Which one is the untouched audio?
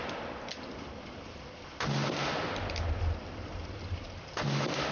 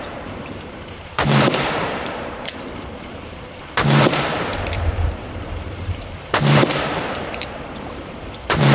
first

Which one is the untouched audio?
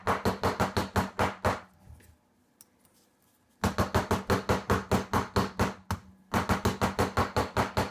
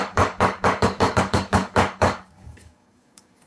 first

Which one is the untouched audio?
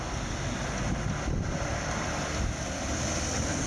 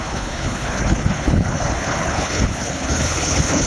first